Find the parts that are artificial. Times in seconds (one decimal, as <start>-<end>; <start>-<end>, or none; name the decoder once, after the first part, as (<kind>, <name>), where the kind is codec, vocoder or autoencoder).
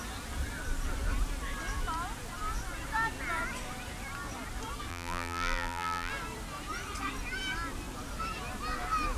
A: 4.9-6.1 (vocoder, BigVGAN v2)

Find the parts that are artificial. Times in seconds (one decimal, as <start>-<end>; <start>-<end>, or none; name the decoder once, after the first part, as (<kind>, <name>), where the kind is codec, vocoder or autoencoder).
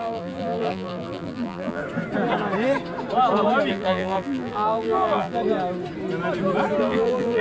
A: 0.0-1.8 (vocoder, BigVGAN v2); 3.7-5.4; 6.8-7.4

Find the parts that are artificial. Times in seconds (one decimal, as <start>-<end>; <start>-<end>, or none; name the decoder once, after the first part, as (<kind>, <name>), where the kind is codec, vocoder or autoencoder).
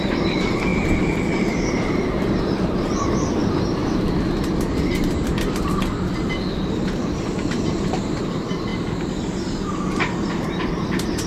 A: 0.0-3.4 (vocoder, BigVGAN v2); 7.2-11.3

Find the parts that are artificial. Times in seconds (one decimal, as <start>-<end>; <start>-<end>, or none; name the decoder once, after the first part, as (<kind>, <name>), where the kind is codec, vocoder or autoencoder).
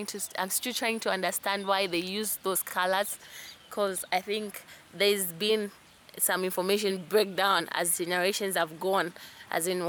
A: 6.9-7.6 (vocoder, BigVGAN v2)